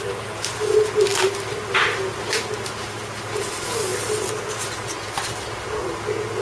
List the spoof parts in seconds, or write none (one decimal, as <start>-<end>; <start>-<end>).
none